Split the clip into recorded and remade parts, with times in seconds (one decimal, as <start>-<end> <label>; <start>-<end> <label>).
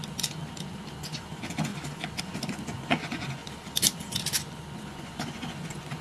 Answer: 0.0-1.0 recorded; 1.0-1.7 remade; 1.7-2.2 recorded; 2.2-3.4 remade; 3.4-4.9 recorded; 4.9-6.0 remade